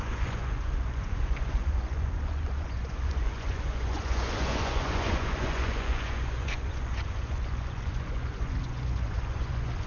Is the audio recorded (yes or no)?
no